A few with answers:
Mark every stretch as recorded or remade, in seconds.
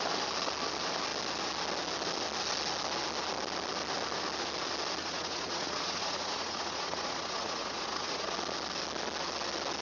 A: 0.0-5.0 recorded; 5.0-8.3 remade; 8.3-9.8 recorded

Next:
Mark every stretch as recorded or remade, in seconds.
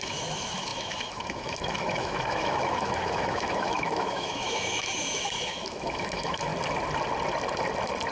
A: 0.0-6.5 remade; 6.5-8.1 recorded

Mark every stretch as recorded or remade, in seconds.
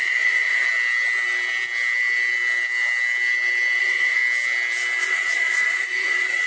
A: 0.0-0.7 remade; 0.7-3.8 recorded; 3.8-4.2 remade; 4.2-5.0 recorded; 5.0-6.5 remade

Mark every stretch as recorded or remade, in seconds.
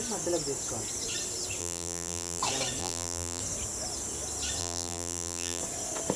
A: 0.0-1.6 recorded; 1.6-2.4 remade; 2.4-2.8 recorded; 2.8-3.4 remade; 3.4-4.6 recorded; 4.6-5.6 remade; 5.6-6.2 recorded